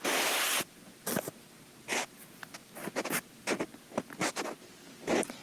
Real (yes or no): yes